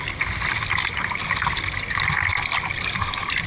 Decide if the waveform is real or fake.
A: real